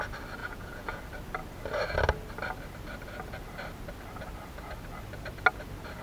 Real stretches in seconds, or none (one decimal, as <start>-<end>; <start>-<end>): 0.0-0.4; 1.0-6.0